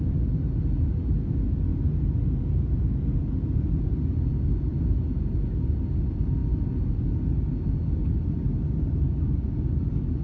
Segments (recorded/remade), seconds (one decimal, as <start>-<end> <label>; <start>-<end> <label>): 0.0-10.2 recorded